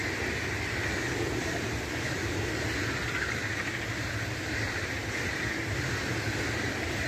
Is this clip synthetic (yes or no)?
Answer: no